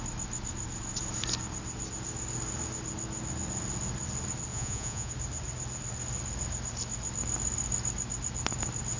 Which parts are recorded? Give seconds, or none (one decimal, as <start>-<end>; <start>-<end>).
0.0-4.5; 5.1-9.0